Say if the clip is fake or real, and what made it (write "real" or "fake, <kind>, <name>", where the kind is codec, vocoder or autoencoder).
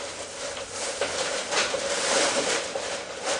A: fake, vocoder, BigVGAN v2